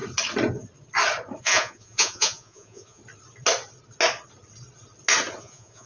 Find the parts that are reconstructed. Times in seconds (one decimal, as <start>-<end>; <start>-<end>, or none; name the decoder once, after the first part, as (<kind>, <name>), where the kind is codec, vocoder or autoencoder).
1.4-3.0 (vocoder, Vocos); 5.4-5.9